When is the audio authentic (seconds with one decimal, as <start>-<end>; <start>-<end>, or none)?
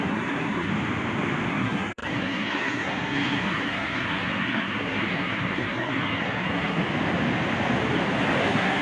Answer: 0.7-1.5; 6.8-8.4